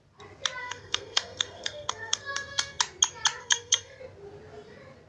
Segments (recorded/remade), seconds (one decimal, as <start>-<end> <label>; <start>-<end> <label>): 0.0-0.6 recorded; 0.6-2.8 remade; 2.8-3.4 recorded; 3.4-4.0 remade; 4.0-5.1 recorded